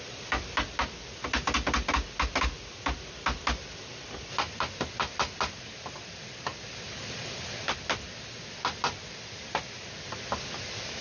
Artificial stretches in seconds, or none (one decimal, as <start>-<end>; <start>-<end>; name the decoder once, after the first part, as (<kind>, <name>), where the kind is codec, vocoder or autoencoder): none

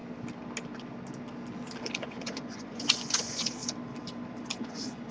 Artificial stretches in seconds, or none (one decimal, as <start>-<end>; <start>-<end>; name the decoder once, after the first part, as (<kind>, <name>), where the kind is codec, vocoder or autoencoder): 2.0-3.6 (vocoder, Vocos); 4.6-5.1